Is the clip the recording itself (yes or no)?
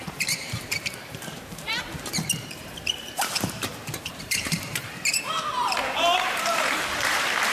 no